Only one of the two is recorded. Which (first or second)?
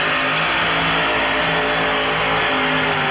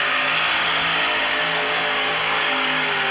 first